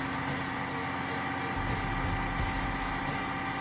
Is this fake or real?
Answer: real